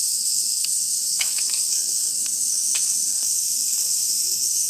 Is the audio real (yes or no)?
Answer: no